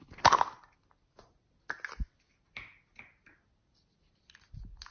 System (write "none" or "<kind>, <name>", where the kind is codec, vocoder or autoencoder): none